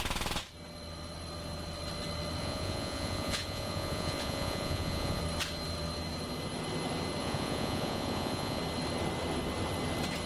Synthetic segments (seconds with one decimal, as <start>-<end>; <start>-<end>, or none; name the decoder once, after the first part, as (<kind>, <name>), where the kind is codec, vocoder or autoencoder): 2.4-5.2 (vocoder, Vocos); 7.2-8.6